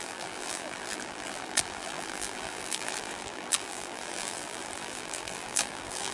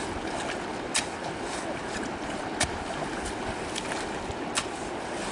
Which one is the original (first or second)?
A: second